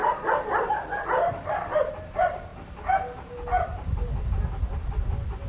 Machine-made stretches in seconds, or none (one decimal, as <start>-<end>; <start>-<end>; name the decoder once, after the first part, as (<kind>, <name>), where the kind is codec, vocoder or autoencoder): 0.0-2.5 (vocoder, BigVGAN v2); 4.3-5.5